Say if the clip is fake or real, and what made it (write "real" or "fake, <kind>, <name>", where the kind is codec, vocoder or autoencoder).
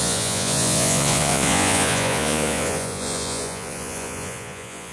fake, vocoder, Vocos